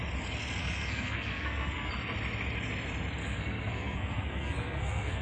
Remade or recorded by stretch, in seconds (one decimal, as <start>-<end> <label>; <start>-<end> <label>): 0.0-0.6 recorded; 0.6-1.9 remade; 1.9-3.2 recorded; 3.2-5.2 remade